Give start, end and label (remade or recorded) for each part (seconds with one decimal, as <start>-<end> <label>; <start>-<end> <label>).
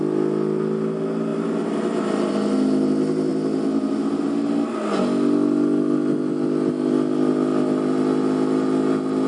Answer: 0.0-1.3 recorded; 1.3-2.3 remade; 2.3-3.3 recorded; 3.3-4.2 remade; 4.2-7.5 recorded; 7.5-8.2 remade; 8.2-9.3 recorded